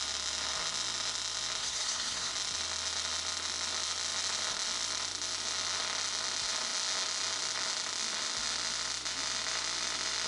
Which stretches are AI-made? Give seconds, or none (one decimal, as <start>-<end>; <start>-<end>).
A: 1.6-2.3